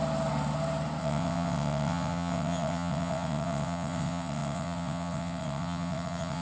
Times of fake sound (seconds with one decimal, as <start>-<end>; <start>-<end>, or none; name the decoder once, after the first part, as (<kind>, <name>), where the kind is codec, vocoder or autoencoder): 1.0-6.4 (vocoder, WaveNeXt)